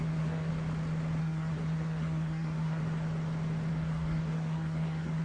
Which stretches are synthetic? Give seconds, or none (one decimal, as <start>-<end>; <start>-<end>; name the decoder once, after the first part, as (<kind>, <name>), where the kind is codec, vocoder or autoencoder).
0.0-0.5 (codec, SNAC); 1.2-2.8; 3.7-5.2